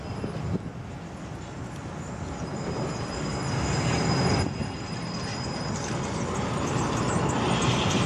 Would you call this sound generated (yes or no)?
no